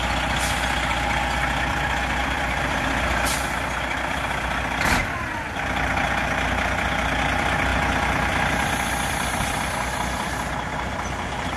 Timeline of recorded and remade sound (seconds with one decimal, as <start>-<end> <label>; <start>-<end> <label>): 0.0-2.2 recorded; 2.2-2.9 remade; 2.9-7.7 recorded; 7.7-8.4 remade; 8.4-11.6 recorded